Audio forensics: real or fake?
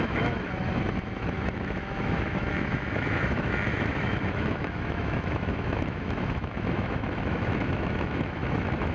fake